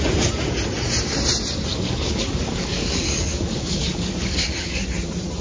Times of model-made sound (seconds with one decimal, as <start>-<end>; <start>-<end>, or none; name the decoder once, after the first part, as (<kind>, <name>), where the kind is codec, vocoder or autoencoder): 1.7-4.9 (codec, DAC)